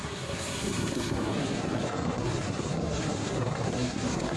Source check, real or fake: fake